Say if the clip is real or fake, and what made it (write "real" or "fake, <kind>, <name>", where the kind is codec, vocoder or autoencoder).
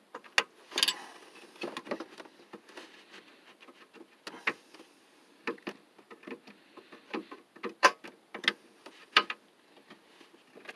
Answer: real